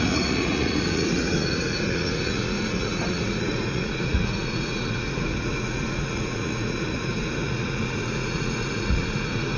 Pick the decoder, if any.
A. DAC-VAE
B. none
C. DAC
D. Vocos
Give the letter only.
D